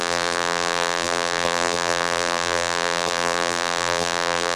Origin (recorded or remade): remade